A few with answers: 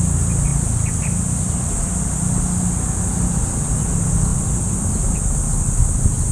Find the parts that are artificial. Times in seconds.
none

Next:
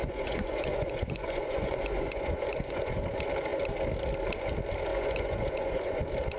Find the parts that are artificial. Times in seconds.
0.0-2.9 (vocoder, Vocos); 4.9-6.0

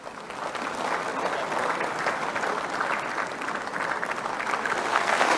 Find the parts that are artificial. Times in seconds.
4.9-5.4 (codec, SNAC)

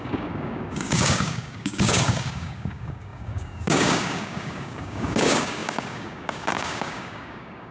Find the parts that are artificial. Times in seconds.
0.0-7.7 (codec, DAC)

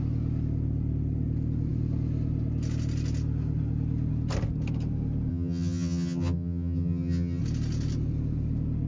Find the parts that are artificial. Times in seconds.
5.3-7.4 (vocoder, HiFi-GAN)

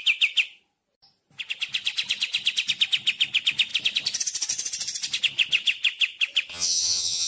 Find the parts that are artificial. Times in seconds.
6.5-7.3 (vocoder, HiFi-GAN)